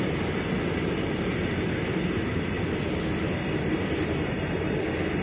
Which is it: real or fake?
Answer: real